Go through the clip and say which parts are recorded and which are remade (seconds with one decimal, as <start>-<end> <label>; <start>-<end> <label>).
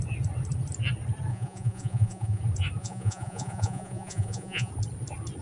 0.0-1.3 recorded; 1.3-2.4 remade; 2.4-2.8 recorded; 2.8-4.7 remade; 4.7-5.4 recorded